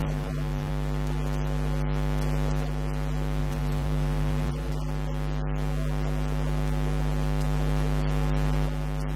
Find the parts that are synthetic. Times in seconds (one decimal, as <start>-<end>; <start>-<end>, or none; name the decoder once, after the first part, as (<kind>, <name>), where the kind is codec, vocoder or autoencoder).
0.0-0.7 (vocoder, BigVGAN v2); 3.4-4.7